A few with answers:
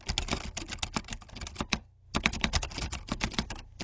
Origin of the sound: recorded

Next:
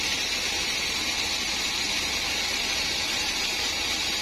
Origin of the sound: recorded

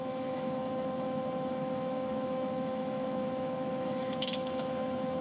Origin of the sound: remade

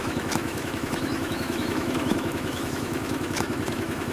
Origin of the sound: remade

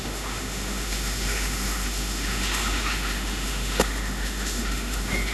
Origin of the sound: remade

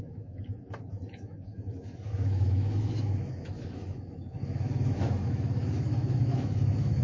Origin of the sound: remade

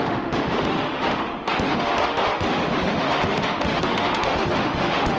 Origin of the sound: remade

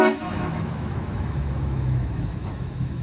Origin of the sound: remade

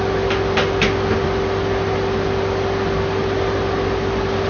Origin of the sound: recorded